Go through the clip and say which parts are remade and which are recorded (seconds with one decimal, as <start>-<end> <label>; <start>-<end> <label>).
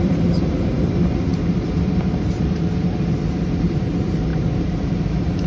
0.0-5.5 remade